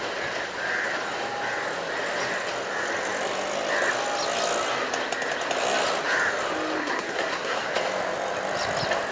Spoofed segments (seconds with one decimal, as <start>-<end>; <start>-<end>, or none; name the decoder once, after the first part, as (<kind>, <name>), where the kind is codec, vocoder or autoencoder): 6.8-7.7 (codec, SNAC)